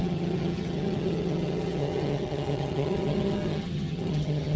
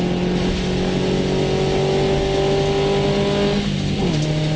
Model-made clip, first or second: first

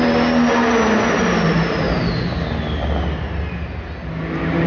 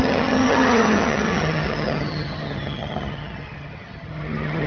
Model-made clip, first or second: second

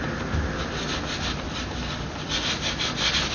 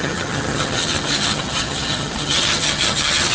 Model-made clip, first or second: second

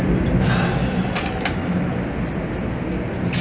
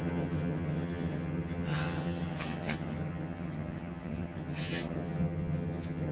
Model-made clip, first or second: second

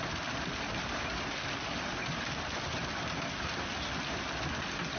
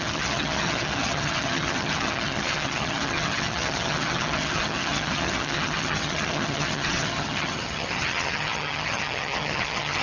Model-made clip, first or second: second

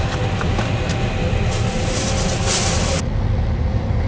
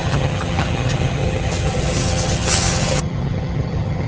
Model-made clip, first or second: second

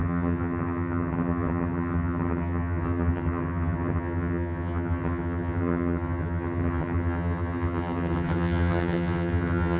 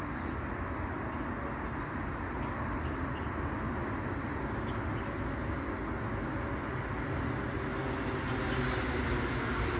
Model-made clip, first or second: first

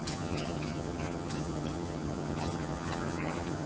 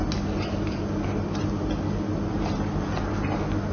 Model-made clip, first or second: first